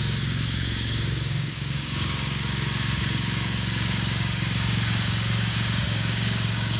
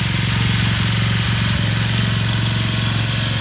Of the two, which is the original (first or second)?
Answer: second